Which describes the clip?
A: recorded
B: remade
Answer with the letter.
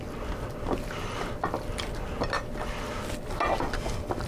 A